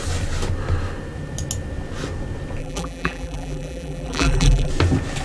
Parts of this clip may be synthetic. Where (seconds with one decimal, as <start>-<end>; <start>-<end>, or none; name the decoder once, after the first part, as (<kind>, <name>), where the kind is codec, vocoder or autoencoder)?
2.6-4.7 (vocoder, BigVGAN v2)